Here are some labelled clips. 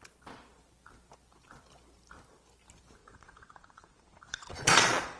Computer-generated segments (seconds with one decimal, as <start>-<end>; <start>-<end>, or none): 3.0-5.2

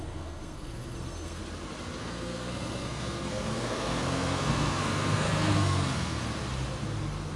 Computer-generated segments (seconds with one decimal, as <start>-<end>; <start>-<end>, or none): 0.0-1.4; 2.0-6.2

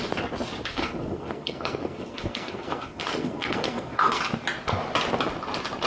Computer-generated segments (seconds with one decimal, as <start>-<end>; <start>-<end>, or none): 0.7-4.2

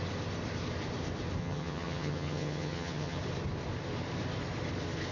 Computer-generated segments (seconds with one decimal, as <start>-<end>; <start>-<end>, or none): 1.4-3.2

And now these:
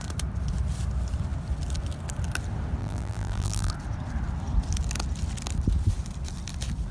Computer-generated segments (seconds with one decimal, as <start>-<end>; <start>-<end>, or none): 2.8-3.7

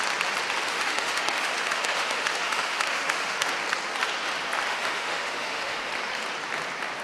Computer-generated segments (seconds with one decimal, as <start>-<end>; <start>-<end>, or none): 0.7-3.5; 4.7-5.9

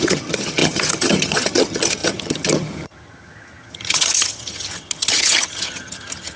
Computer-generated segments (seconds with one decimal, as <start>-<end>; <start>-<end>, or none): 0.0-6.4